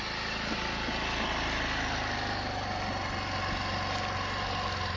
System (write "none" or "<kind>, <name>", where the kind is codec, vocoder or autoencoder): none